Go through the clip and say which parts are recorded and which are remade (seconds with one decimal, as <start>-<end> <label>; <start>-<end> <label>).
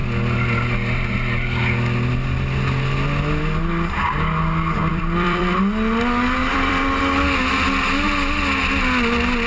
0.0-4.9 recorded; 4.9-5.6 remade; 5.6-6.4 recorded; 6.4-7.0 remade; 7.0-9.5 recorded